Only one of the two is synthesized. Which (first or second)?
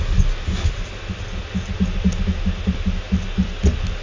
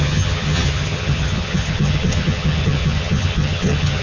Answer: second